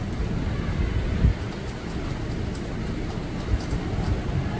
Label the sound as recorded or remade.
recorded